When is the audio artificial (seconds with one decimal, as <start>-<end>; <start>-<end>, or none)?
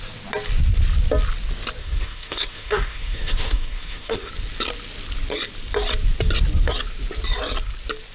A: 1.8-4.3